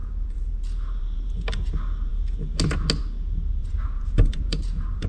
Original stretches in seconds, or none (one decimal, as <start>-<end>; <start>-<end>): 1.7-3.6

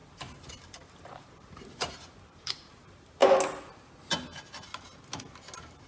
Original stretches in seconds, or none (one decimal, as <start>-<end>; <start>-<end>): 0.0-0.5; 3.2-5.9

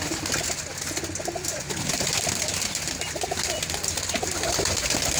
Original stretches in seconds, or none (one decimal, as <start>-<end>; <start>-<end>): 0.0-5.2

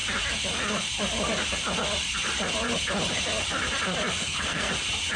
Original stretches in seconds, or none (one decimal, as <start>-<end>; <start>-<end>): 0.0-4.2; 4.7-5.2

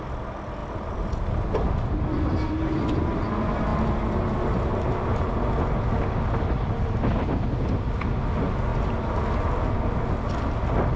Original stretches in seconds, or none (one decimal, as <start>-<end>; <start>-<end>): 0.0-11.0

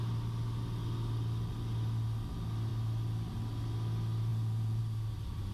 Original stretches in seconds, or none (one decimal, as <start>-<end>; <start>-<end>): 0.0-4.3; 4.8-5.5